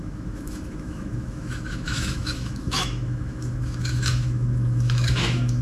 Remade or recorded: remade